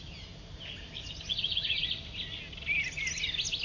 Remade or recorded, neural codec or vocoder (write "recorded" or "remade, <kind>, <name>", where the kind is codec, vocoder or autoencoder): recorded